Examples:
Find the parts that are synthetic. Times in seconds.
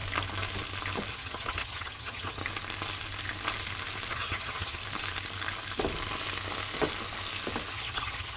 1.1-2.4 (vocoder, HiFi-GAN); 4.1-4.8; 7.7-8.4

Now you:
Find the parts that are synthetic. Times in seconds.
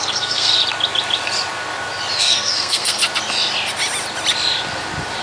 0.0-0.5 (codec, SNAC); 2.2-3.0